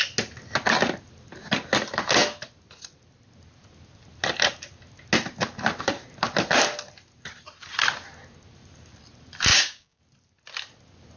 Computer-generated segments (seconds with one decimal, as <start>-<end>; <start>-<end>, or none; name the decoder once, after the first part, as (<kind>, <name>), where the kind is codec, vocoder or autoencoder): 9.5-10.0 (codec, DAC)